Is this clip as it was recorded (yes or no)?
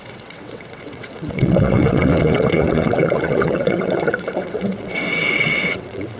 no